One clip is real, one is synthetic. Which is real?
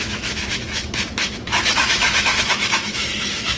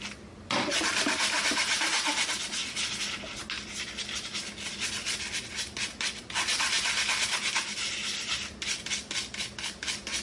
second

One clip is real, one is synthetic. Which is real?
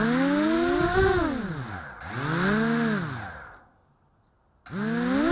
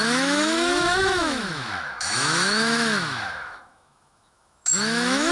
first